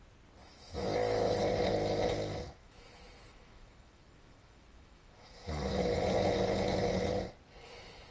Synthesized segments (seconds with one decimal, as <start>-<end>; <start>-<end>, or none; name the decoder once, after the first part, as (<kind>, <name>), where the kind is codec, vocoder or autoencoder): 0.4-1.4 (autoencoder, DAC-VAE); 2.6-6.0